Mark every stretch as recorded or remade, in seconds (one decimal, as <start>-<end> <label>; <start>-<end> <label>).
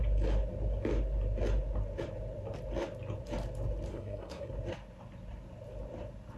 0.0-3.9 recorded; 3.9-4.5 remade; 4.5-6.4 recorded